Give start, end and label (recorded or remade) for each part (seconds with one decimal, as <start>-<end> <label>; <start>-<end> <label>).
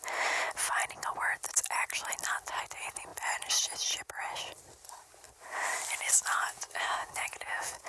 0.0-6.3 recorded; 6.3-7.9 remade